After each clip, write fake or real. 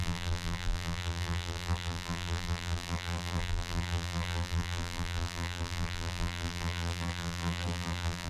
fake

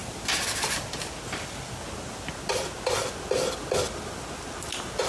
real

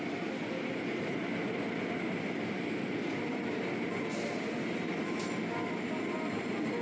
real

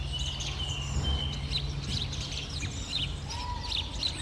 real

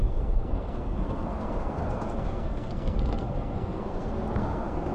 fake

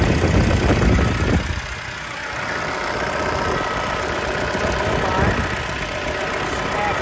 real